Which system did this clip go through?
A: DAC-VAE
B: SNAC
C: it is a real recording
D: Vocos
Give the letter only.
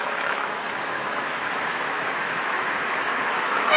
A